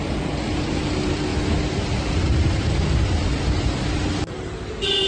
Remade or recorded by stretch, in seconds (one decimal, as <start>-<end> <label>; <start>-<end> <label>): 0.0-5.1 recorded